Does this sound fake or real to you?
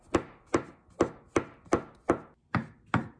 real